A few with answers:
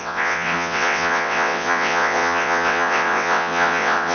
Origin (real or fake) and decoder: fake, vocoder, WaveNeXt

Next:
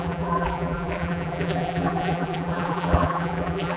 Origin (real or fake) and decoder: fake, vocoder, BigVGAN v2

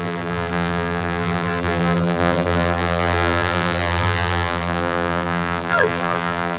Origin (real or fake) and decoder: fake, vocoder, BigVGAN v2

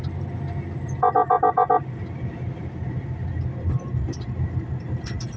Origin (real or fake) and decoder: real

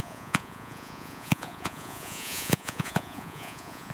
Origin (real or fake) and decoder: fake, vocoder, Vocos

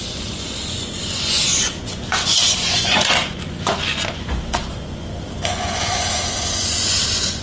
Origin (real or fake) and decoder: fake, vocoder, Vocos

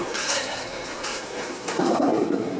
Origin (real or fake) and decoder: fake, codec, SNAC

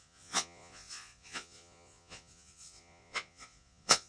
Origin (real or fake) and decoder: fake, vocoder, Vocos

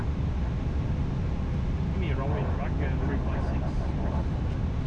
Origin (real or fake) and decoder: real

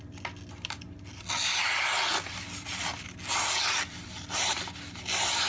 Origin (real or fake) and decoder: real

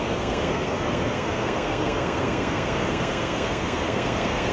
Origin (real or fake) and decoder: fake, codec, SNAC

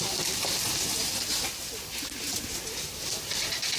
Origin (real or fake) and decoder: real